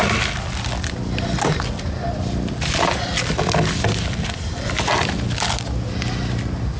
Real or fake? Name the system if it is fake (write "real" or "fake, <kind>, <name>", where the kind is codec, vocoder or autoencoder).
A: real